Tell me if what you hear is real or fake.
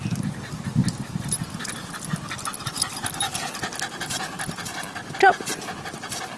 real